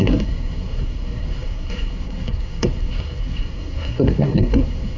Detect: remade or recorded remade